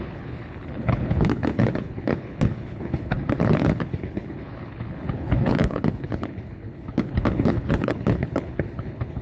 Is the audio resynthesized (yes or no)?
yes